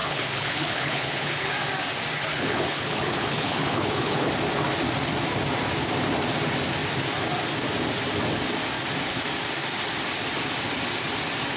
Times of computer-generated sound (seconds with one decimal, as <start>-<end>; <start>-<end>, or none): 0.0-1.5; 2.3-4.3